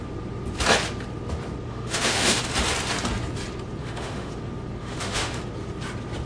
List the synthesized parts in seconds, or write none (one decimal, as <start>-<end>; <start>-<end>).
1.7-2.4; 3.8-4.3; 4.8-5.4